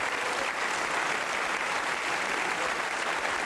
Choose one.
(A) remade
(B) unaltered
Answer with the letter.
B